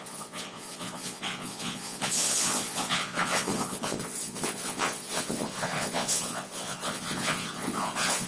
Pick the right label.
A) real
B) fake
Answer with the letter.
B